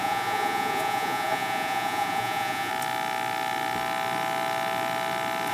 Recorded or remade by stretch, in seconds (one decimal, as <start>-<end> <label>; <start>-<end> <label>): 0.0-2.7 remade; 2.7-5.5 recorded